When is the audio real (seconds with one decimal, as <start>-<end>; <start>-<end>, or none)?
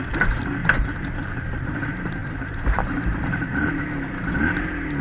0.0-0.6; 1.4-2.2; 3.8-5.0